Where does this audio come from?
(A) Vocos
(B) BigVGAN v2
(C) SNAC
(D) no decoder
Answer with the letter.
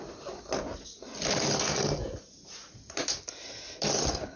D